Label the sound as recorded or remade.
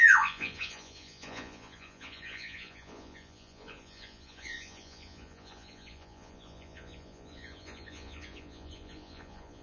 remade